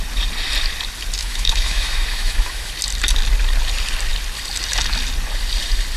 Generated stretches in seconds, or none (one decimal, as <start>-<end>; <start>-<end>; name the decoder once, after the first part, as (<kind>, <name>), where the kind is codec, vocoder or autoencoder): 1.2-2.7 (autoencoder, DAC-VAE)